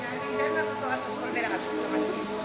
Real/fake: real